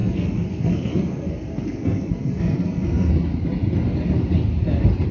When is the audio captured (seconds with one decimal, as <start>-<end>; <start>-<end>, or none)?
3.1-5.1